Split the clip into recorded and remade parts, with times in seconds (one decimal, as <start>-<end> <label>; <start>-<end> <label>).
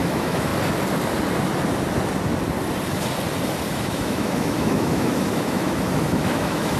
0.0-0.5 remade; 0.5-3.8 recorded; 3.8-6.8 remade